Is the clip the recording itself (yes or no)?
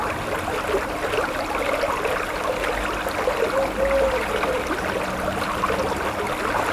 yes